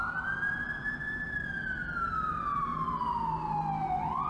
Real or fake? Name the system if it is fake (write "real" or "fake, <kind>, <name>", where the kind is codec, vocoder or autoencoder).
real